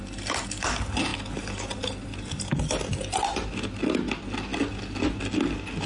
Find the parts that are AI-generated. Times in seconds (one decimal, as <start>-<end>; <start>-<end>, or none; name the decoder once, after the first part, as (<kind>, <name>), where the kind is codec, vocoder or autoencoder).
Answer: none